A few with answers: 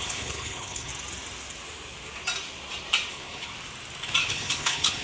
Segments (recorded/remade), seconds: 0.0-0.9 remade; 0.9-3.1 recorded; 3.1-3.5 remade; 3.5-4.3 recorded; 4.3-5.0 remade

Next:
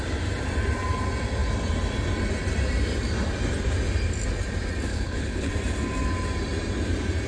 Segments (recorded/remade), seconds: 0.0-4.9 recorded; 4.9-5.5 remade; 5.5-7.3 recorded

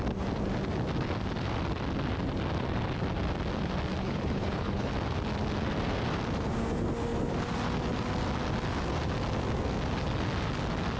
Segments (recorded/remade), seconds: 0.0-4.0 recorded; 4.0-4.9 remade; 4.9-11.0 recorded